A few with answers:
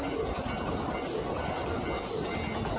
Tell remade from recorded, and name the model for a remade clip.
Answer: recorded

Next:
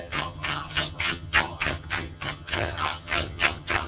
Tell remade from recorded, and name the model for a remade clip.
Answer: remade, vocoder, HiFi-GAN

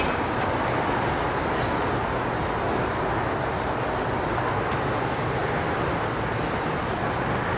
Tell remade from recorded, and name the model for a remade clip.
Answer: recorded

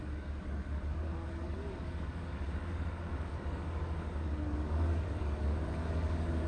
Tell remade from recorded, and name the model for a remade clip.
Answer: remade, codec, DAC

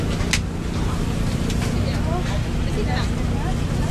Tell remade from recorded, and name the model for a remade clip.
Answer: recorded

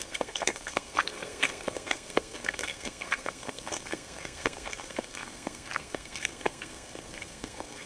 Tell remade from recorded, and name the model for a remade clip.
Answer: remade, codec, SNAC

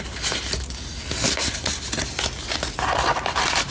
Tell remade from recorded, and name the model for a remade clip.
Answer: recorded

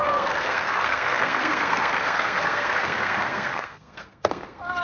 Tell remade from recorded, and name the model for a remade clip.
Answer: remade, codec, SNAC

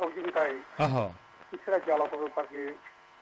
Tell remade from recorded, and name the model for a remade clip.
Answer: remade, vocoder, Vocos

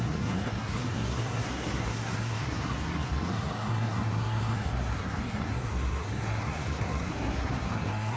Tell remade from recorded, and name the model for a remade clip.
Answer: remade, codec, SNAC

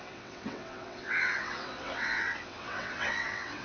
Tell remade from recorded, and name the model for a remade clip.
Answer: remade, vocoder, WaveNeXt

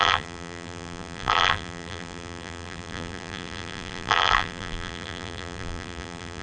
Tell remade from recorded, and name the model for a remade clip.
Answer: remade, vocoder, BigVGAN v2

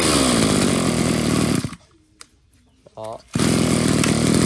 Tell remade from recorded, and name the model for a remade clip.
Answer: recorded